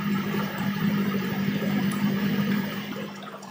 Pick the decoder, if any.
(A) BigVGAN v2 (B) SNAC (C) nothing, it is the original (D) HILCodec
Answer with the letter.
A